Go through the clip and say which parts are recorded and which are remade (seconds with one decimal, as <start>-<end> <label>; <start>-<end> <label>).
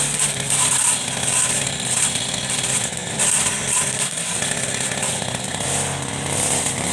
0.0-6.9 recorded